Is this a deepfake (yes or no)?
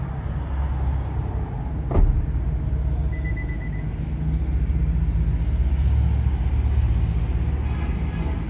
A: no